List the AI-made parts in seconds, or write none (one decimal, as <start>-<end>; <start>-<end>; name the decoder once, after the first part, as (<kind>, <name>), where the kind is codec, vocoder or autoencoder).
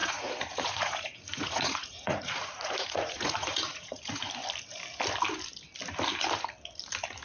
0.0-4.3 (vocoder, Vocos)